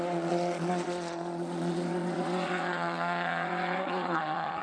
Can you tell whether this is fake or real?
fake